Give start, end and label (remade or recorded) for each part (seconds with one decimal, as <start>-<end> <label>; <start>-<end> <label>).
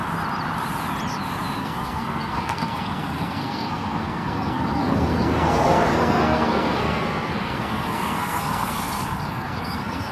0.0-1.6 recorded; 1.6-10.1 remade